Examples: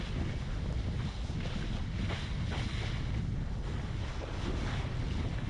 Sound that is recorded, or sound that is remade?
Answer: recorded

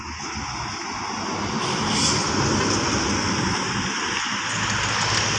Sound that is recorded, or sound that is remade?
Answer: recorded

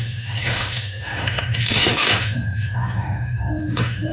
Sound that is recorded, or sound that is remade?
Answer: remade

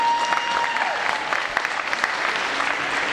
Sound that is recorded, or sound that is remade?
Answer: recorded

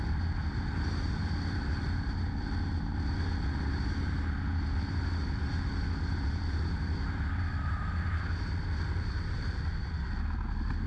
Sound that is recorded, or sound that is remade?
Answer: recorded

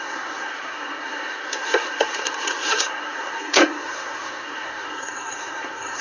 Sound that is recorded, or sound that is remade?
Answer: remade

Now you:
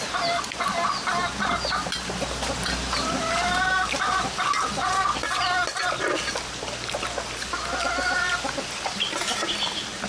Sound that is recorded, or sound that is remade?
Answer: recorded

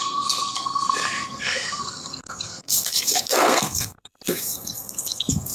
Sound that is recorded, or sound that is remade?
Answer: remade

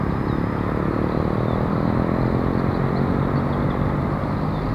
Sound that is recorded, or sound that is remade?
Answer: recorded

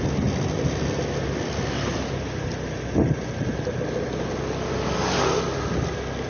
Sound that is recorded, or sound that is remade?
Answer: recorded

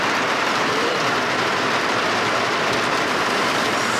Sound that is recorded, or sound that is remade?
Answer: remade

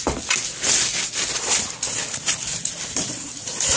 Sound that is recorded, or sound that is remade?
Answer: recorded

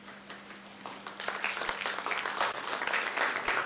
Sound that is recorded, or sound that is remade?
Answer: recorded